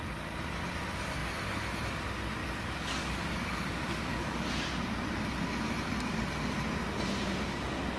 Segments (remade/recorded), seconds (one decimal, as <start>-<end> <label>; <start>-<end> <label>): 0.0-2.4 recorded; 2.4-4.5 remade; 4.5-8.0 recorded